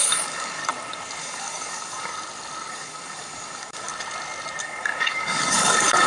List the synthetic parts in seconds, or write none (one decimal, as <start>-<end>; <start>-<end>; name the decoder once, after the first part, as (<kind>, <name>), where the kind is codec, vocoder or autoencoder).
0.0-0.6 (codec, DAC); 1.2-2.1; 2.7-3.9; 4.6-6.1